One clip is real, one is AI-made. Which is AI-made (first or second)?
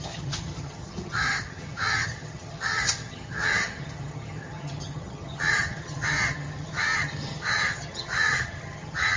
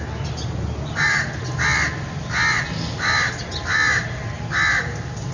first